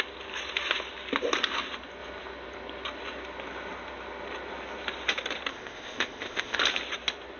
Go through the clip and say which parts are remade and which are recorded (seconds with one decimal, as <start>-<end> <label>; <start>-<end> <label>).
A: 0.0-5.5 recorded; 5.5-6.6 remade; 6.6-7.4 recorded